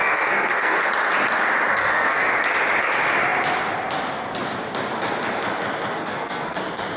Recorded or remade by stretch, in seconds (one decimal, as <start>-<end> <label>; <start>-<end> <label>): 0.0-0.9 remade; 0.9-1.7 recorded; 1.7-2.3 remade; 2.3-6.0 recorded; 6.0-6.6 remade; 6.6-7.0 recorded